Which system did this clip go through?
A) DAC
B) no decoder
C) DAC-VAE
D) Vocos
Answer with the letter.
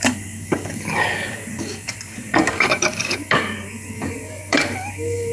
A